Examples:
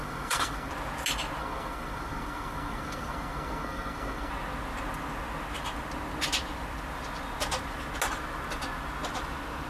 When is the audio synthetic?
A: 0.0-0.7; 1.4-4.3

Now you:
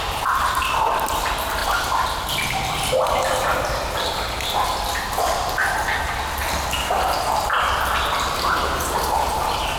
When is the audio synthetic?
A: none

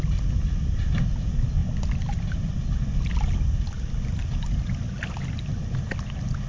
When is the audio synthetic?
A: none

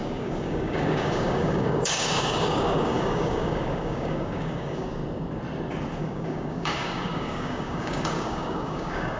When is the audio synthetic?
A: 0.0-5.0; 6.0-9.2